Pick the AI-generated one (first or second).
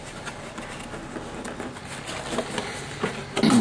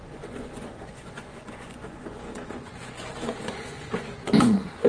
second